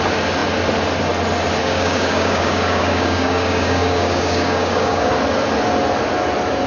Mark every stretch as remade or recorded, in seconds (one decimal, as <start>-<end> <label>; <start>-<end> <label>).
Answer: 0.0-1.6 recorded; 1.6-5.1 remade; 5.1-6.7 recorded